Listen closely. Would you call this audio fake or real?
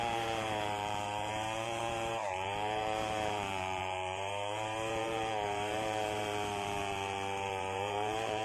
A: fake